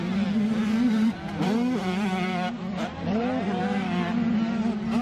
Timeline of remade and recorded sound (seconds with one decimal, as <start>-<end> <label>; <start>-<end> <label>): 0.0-0.6 recorded; 0.6-3.6 remade; 3.6-5.0 recorded